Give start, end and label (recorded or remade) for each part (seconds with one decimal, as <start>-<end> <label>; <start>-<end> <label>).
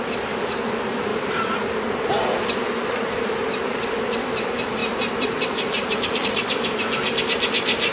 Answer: 0.0-1.1 recorded; 1.1-3.3 remade; 3.3-4.8 recorded; 4.8-6.2 remade; 6.2-7.9 recorded